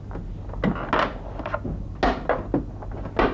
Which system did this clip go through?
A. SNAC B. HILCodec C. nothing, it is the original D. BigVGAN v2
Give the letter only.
C